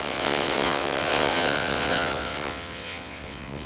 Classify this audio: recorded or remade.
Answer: remade